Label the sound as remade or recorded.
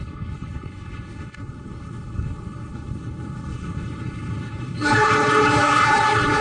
remade